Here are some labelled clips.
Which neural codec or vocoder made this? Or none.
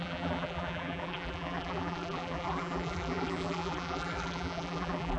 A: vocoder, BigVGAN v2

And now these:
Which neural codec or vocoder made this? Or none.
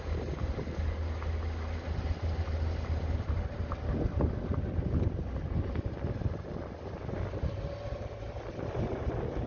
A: none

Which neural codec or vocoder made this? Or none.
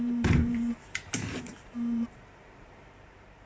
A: vocoder, BigVGAN v2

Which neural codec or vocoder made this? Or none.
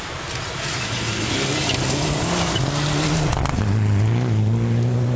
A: none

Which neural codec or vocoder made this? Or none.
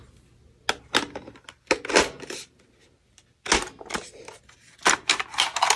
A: none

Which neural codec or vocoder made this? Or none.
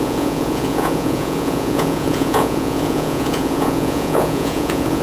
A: vocoder, Vocos